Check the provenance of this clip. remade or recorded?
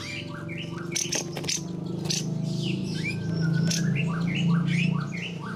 recorded